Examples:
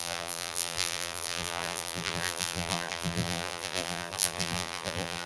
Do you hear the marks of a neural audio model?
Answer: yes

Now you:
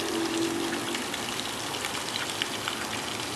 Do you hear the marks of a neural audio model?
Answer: no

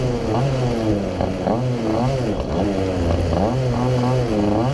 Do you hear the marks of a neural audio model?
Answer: no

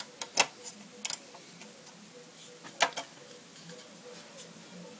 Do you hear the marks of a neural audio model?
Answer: no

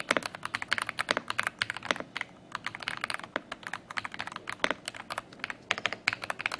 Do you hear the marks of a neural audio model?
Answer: no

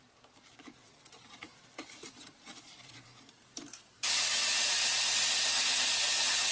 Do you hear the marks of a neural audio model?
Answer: yes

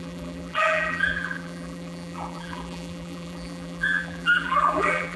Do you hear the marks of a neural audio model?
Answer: yes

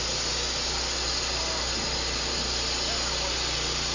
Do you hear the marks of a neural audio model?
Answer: no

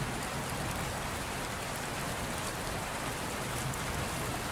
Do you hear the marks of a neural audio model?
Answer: no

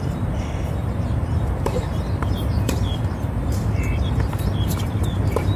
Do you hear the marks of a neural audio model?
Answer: yes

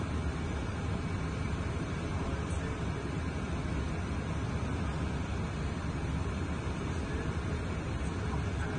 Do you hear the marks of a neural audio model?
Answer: no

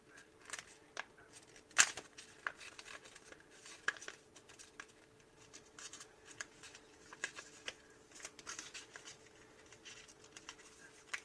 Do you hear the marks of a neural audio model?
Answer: no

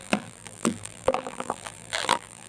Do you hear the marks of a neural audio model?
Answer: yes